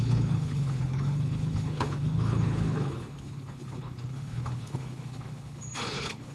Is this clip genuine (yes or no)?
no